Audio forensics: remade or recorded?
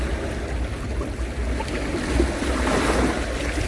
recorded